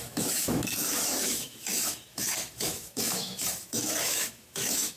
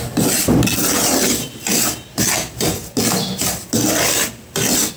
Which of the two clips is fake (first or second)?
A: first